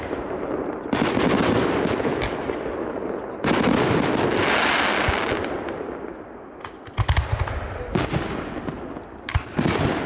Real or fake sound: real